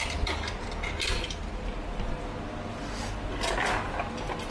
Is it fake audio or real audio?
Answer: real